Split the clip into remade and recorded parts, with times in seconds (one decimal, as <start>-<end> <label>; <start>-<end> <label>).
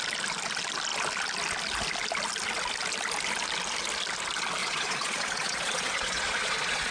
0.0-4.6 recorded; 4.6-6.9 remade